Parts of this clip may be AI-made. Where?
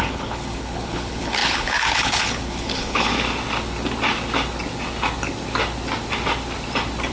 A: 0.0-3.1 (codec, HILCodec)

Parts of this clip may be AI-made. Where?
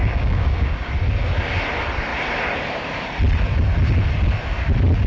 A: 0.0-0.9 (codec, DAC)